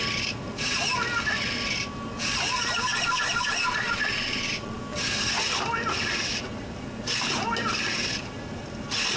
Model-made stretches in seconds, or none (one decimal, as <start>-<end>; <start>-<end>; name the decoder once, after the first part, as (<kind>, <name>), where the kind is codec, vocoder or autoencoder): 2.9-4.8 (vocoder, Vocos)